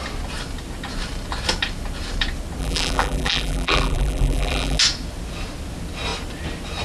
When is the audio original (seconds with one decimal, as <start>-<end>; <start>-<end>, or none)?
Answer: 0.0-2.6; 4.8-6.8